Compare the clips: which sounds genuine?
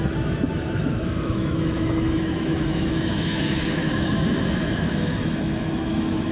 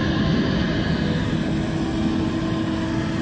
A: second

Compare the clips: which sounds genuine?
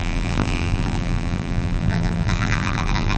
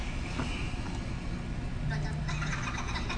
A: second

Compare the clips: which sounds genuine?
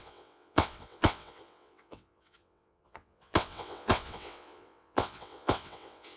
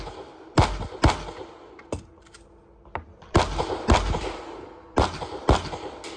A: second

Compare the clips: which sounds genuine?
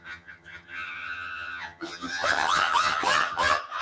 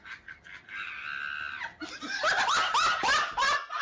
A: second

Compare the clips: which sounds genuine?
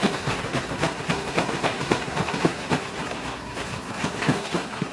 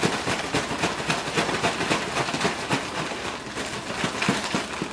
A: second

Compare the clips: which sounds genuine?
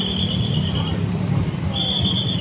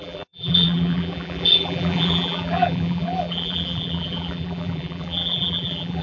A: first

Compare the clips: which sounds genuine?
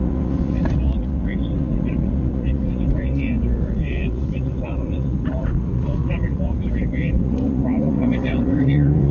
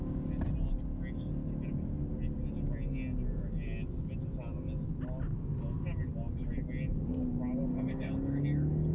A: second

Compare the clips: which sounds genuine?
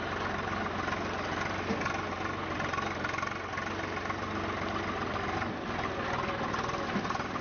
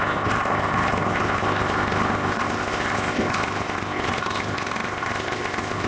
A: first